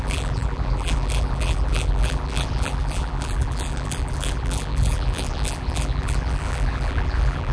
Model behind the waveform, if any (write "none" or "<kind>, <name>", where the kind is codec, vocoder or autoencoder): vocoder, BigVGAN v2